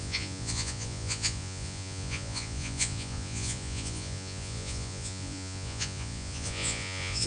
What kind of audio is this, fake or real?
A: fake